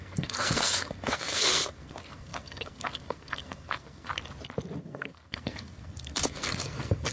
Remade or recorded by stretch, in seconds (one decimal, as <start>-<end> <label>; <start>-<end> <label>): 0.0-4.1 remade; 4.1-4.8 recorded; 4.8-7.1 remade